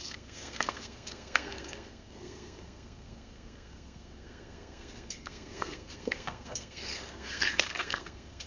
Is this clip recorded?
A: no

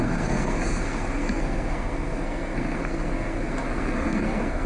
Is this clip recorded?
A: no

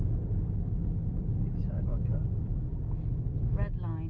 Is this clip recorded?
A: yes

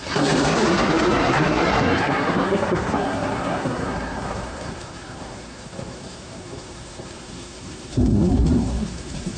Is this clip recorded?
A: no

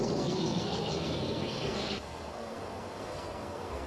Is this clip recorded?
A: no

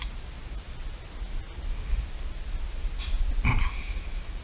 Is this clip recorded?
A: yes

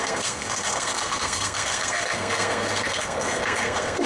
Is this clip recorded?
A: no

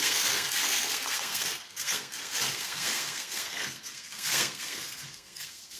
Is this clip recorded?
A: no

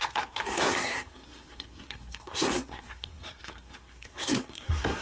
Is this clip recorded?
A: no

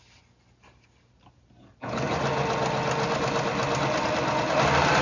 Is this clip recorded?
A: yes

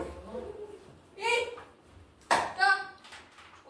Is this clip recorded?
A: yes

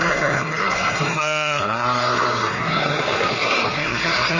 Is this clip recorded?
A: no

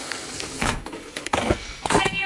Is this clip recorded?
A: no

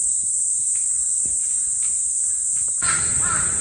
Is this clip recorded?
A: yes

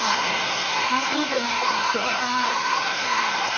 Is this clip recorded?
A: no